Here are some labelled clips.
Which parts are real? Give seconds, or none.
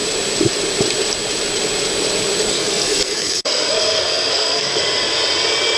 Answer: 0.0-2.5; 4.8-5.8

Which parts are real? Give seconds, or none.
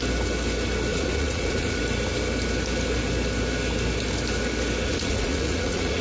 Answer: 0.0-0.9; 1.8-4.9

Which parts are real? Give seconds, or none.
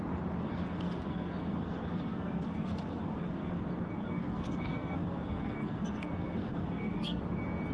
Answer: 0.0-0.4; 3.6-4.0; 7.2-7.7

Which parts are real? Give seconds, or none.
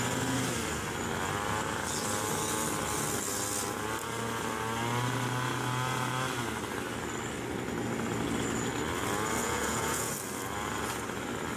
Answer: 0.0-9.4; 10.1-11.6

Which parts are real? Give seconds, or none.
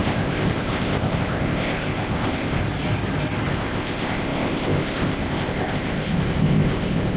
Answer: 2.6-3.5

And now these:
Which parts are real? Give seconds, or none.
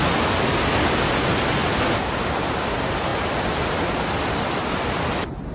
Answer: 0.0-5.5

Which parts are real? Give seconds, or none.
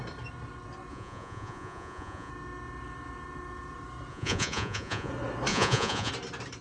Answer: 0.0-0.9; 2.3-4.1; 5.1-5.5; 6.1-6.6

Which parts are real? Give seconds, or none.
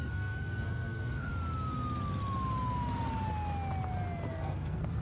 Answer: 1.3-4.3